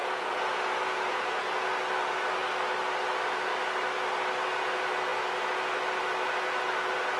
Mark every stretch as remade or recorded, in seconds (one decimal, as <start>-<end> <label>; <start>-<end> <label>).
0.0-1.7 remade; 1.7-7.2 recorded